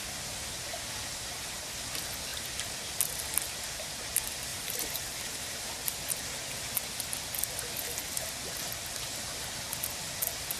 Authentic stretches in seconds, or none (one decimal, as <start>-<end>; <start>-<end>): 0.0-4.5; 5.6-10.6